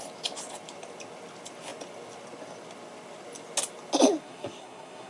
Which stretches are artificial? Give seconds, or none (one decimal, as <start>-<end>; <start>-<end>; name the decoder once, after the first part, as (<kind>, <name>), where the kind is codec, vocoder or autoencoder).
4.2-5.1 (codec, SNAC)